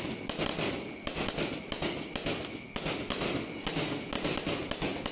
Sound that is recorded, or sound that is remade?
recorded